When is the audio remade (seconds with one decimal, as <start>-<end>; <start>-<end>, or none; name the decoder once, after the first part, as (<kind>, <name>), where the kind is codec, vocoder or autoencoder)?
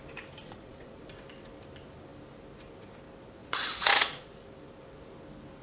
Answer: 0.4-1.0 (vocoder, Vocos); 3.4-4.3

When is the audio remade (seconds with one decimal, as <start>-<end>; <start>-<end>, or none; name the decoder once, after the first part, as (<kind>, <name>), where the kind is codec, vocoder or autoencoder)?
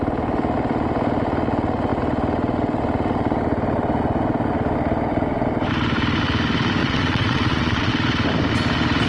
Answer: 6.8-7.9 (vocoder, Vocos)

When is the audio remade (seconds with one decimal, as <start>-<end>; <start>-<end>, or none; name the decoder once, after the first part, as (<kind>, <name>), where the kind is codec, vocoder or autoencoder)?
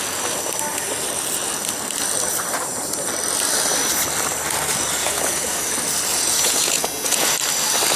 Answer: 5.0-5.6 (vocoder, Vocos); 6.1-7.3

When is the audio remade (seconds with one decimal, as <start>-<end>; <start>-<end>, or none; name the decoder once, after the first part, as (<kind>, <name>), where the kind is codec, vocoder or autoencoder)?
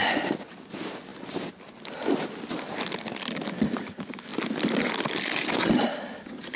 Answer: none